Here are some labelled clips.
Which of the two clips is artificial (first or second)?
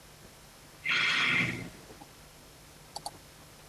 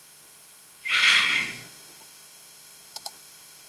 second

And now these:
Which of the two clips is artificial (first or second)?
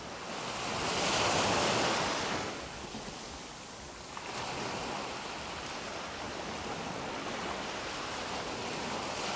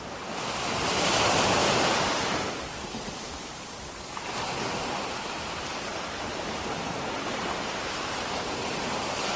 second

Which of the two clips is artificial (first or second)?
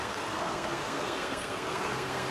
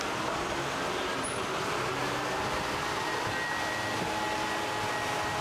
first